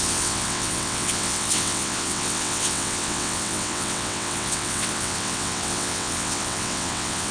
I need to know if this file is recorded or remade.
remade